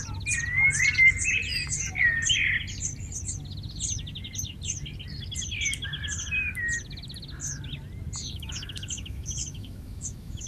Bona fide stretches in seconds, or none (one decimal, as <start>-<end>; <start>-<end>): 0.0-8.2